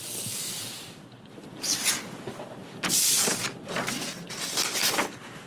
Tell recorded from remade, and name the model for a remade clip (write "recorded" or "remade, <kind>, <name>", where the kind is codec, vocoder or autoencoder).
recorded